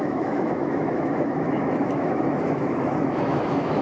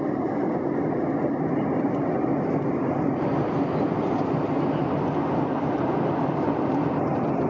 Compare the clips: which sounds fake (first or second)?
first